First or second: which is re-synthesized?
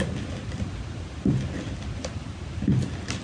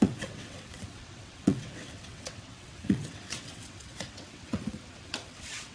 second